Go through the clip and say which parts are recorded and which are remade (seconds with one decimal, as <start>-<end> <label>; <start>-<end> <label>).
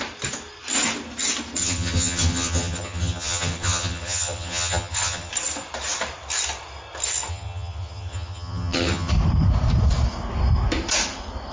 0.0-1.6 recorded; 1.6-5.3 remade; 5.3-7.3 recorded; 7.3-9.1 remade; 9.1-11.5 recorded